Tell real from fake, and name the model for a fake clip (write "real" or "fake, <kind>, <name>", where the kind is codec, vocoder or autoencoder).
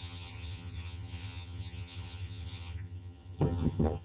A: fake, vocoder, HiFi-GAN